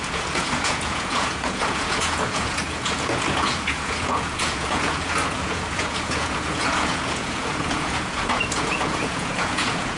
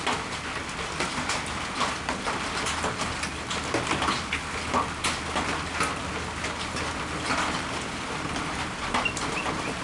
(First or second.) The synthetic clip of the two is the first